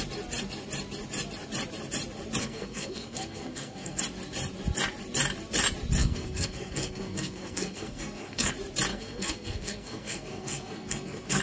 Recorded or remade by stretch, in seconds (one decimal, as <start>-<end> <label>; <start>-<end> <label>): 0.0-2.4 recorded; 2.4-4.0 remade; 4.0-6.0 recorded; 6.0-8.5 remade; 8.5-8.9 recorded; 8.9-11.4 remade